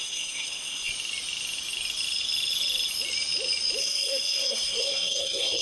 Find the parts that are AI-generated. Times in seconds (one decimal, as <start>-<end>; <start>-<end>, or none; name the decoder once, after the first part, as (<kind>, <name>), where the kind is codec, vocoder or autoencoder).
0.0-0.9 (codec, SNAC); 3.8-5.6